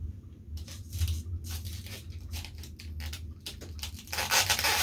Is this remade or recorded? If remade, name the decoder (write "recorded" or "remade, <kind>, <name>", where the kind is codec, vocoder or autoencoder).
recorded